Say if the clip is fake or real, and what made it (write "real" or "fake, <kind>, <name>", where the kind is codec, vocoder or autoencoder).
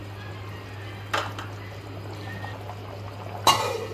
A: real